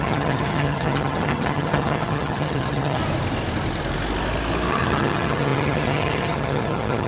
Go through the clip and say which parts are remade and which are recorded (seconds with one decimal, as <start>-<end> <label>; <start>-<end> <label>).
0.0-3.0 remade; 3.0-4.7 recorded; 4.7-7.1 remade